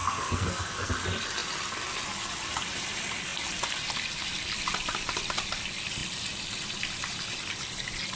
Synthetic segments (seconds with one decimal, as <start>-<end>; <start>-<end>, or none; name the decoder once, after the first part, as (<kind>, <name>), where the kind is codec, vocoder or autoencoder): 0.0-0.9 (codec, SNAC)